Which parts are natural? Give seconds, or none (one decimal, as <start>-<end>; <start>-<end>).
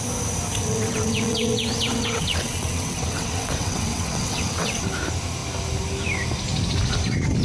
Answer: 0.0-0.6; 4.8-7.4